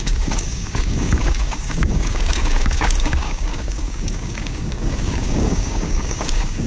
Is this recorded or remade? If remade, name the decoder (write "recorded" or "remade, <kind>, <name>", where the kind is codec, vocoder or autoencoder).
remade, codec, DAC